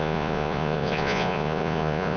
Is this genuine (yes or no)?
no